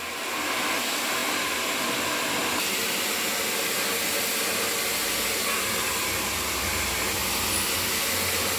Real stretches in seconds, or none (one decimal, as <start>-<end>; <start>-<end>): 0.0-8.6